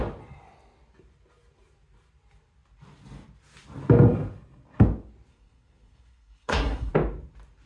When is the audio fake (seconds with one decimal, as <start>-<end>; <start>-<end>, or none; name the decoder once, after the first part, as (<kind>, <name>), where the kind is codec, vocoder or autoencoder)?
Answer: 5.3-6.9 (codec, SNAC)